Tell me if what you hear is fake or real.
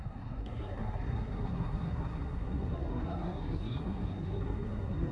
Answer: fake